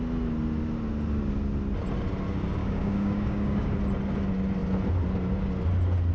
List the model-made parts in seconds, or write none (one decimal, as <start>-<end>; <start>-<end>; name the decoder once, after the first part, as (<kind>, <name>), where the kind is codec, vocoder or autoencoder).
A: 2.6-3.7 (codec, DAC)